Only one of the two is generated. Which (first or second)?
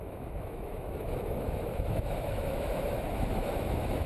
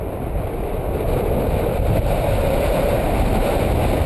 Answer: first